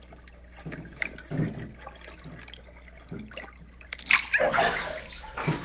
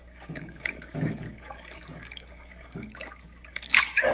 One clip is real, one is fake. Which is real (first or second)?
first